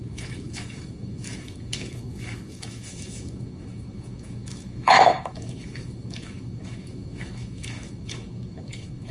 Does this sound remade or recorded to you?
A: remade